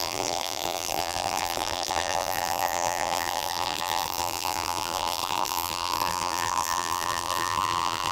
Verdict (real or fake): fake